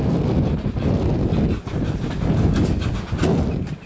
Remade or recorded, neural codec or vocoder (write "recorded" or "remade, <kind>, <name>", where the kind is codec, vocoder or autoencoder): recorded